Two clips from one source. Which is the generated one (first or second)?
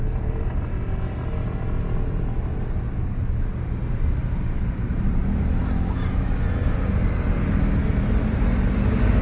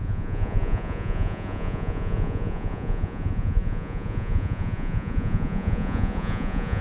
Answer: second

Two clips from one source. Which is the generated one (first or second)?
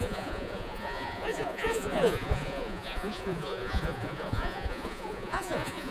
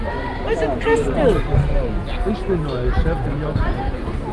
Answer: first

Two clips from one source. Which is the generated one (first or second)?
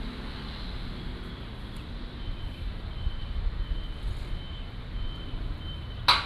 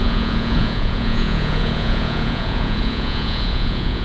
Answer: second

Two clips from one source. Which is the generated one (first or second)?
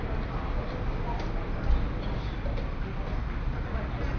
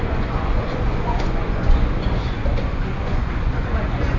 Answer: second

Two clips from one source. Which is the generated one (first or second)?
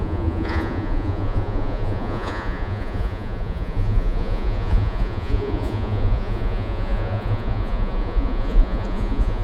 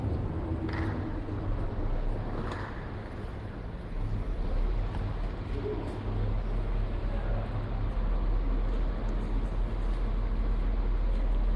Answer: first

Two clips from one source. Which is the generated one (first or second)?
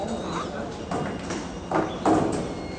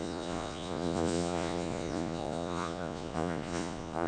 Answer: second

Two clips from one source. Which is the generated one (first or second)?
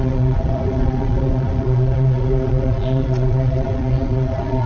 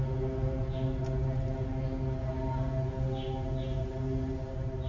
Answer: first